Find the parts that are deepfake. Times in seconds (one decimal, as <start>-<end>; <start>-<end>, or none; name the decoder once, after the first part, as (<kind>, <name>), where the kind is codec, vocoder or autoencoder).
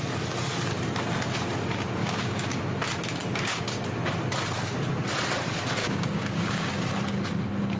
2.0-2.6 (codec, DAC); 3.2-3.8; 5.8-6.7